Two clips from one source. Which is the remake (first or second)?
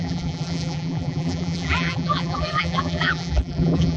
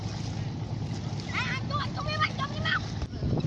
first